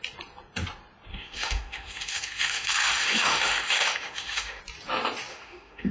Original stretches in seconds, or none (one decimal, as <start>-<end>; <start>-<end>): 0.0-1.1; 4.6-5.3